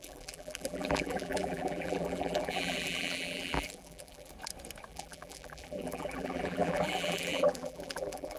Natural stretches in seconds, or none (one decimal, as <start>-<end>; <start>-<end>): 4.3-4.9